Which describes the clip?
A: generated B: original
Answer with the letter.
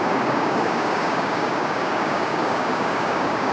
A